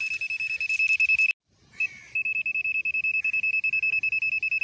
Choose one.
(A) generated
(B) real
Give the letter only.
B